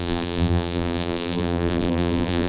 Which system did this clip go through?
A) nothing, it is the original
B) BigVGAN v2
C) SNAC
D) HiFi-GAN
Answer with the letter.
B